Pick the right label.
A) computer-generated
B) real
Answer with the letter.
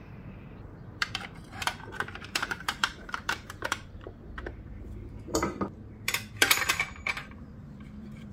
A